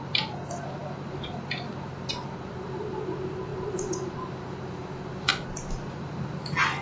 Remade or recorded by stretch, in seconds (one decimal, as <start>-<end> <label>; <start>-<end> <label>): 0.0-6.8 recorded